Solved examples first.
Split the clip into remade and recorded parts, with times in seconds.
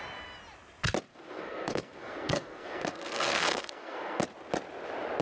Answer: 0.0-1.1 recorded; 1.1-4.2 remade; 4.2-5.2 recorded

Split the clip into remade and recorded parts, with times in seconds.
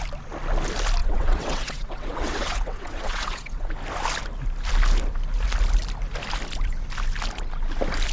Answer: 0.0-1.0 recorded; 1.0-3.7 remade; 3.7-8.1 recorded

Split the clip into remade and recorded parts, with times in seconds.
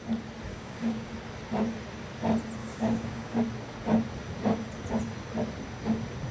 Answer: 0.0-0.5 recorded; 0.5-1.1 remade; 1.1-2.6 recorded; 2.6-3.4 remade; 3.4-6.3 recorded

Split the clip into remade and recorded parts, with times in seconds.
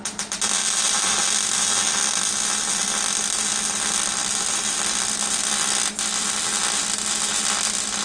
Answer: 0.0-0.6 recorded; 0.6-1.2 remade; 1.2-4.2 recorded; 4.2-5.1 remade; 5.1-8.0 recorded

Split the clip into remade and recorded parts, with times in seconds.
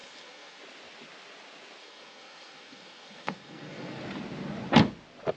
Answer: 0.0-0.6 remade; 0.6-1.8 recorded; 1.8-4.0 remade; 4.0-5.4 recorded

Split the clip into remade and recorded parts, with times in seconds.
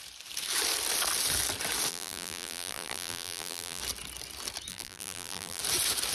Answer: 0.0-1.9 recorded; 1.9-3.8 remade; 3.8-4.7 recorded; 4.7-5.6 remade; 5.6-6.1 recorded